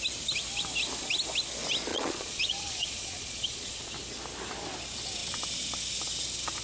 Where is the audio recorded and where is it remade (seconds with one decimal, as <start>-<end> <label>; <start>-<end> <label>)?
0.0-1.9 recorded; 1.9-3.9 remade; 3.9-6.6 recorded